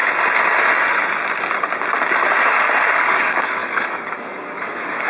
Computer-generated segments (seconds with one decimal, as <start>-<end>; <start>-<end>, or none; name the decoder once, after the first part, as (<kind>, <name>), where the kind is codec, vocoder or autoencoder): 2.9-5.1 (codec, DAC)